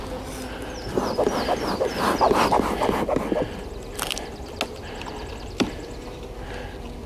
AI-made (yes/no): no